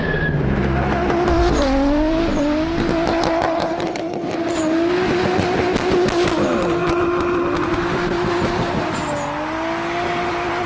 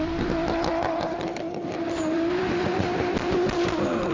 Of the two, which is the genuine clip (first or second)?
first